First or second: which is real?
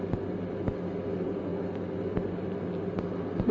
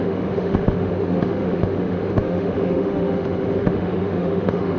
first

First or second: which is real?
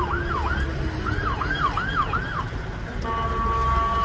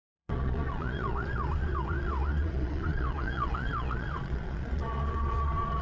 first